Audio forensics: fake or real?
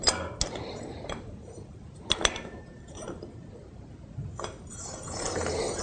real